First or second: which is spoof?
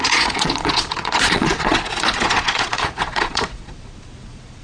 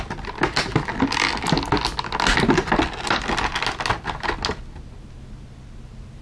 first